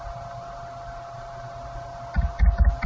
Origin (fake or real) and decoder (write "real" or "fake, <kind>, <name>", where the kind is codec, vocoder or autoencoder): real